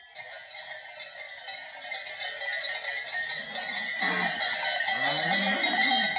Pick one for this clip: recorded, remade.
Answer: recorded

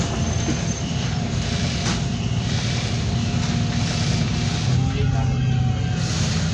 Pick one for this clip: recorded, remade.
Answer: recorded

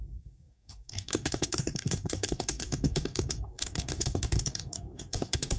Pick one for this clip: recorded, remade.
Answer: remade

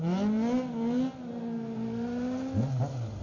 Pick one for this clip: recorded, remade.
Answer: recorded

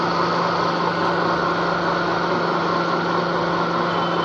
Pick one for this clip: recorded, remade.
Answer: recorded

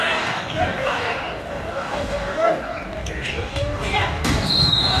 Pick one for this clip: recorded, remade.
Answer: remade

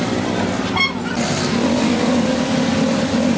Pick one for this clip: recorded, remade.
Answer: recorded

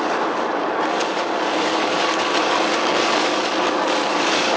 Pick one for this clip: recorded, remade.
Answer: remade